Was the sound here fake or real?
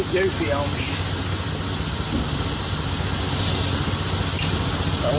real